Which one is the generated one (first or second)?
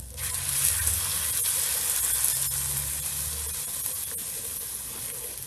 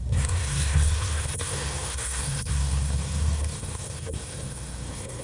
second